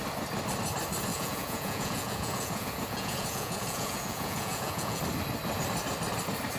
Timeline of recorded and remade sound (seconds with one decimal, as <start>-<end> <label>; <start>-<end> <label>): 0.0-1.1 recorded; 1.1-5.0 remade; 5.0-6.6 recorded